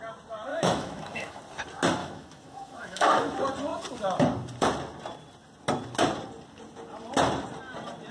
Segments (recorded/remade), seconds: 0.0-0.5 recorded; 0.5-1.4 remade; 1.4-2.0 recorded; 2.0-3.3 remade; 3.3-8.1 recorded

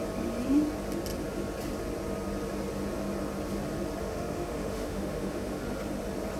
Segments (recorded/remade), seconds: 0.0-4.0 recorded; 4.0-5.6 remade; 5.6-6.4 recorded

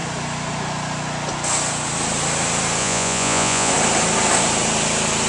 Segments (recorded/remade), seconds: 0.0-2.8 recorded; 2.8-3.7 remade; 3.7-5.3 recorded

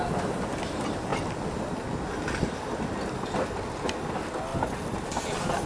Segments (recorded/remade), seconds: 0.0-4.5 recorded; 4.5-5.2 remade; 5.2-5.7 recorded

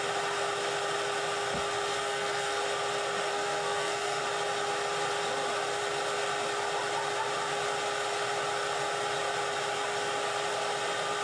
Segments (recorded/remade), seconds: 0.0-1.9 recorded; 1.9-2.6 remade; 2.6-3.3 recorded; 3.3-4.2 remade; 4.2-11.2 recorded

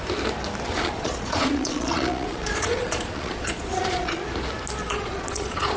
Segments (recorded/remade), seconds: 0.0-0.7 recorded; 0.7-4.2 remade; 4.2-4.8 recorded; 4.8-5.8 remade